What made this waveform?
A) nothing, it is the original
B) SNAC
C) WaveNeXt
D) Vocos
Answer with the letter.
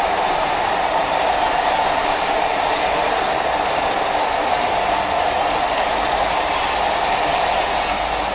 A